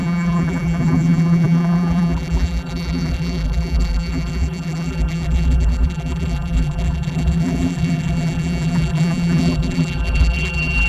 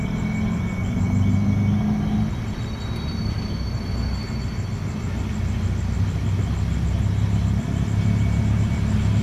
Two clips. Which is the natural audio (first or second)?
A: second